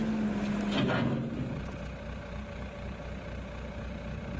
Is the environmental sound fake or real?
real